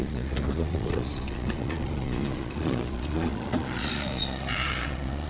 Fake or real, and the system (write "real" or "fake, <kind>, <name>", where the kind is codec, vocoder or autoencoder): fake, vocoder, Vocos